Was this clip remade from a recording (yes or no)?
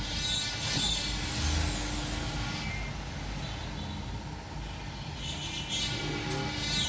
no